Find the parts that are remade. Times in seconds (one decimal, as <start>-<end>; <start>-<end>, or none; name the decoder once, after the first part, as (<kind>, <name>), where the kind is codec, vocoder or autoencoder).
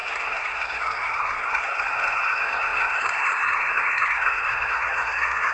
0.0-5.5 (codec, SNAC)